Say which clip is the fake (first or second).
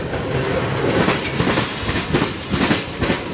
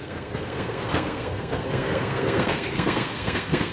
second